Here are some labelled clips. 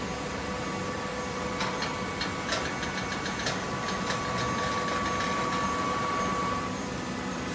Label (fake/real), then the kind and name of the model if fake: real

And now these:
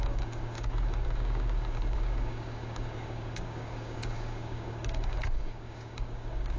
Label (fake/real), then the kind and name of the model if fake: fake, codec, DAC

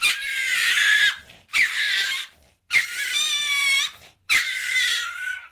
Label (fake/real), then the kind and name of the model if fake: fake, vocoder, BigVGAN v2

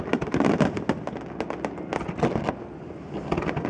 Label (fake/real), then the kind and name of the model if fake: real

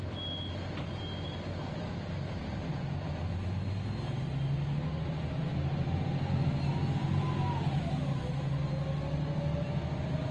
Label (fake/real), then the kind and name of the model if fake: real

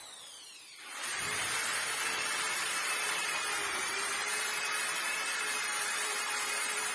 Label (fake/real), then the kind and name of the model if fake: fake, vocoder, BigVGAN v2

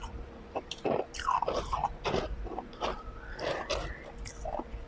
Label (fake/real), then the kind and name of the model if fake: fake, vocoder, BigVGAN v2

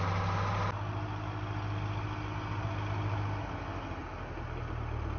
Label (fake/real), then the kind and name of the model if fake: real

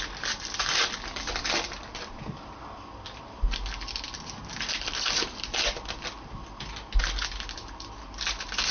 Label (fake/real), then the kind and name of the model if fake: real